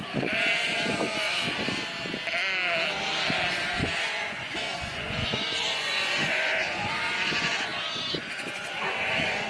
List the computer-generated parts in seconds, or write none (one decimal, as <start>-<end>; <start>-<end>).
0.0-1.4; 3.5-9.5